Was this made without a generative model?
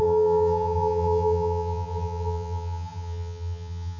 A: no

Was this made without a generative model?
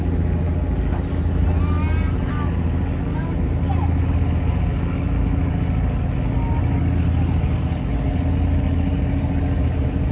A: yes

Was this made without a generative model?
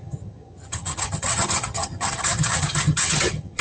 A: no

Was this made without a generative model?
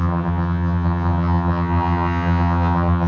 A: no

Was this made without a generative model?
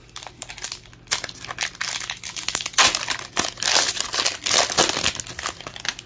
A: yes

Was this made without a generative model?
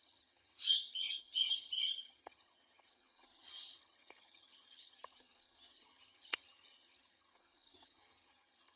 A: no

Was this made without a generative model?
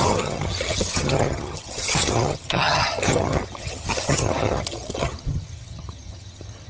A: no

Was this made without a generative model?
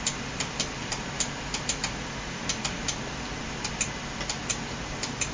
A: yes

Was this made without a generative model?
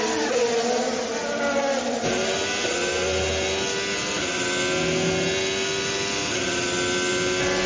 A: yes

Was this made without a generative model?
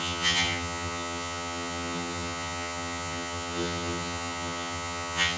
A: no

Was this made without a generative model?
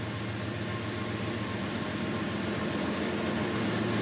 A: yes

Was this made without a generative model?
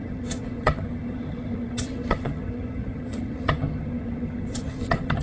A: no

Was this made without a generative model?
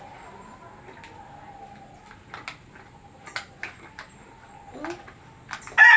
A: yes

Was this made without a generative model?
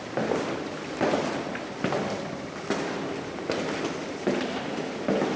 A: yes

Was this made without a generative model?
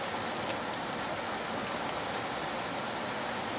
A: yes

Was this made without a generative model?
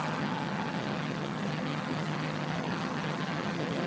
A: no